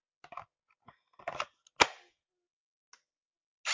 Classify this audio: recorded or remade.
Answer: recorded